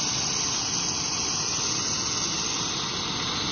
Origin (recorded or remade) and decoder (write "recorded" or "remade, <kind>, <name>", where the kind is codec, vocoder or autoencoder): recorded